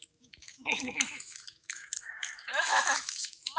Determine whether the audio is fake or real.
fake